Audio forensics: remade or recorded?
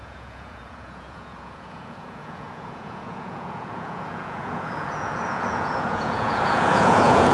remade